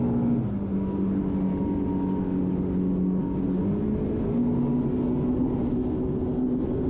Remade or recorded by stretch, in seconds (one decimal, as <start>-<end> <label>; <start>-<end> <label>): 0.0-6.9 recorded

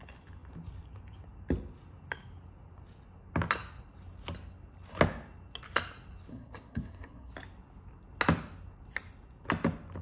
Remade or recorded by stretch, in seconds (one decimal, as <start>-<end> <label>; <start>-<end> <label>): 0.0-6.3 recorded; 6.3-7.3 remade; 7.3-10.0 recorded